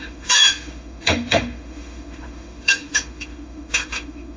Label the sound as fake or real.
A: fake